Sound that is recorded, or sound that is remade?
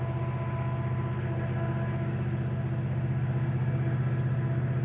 recorded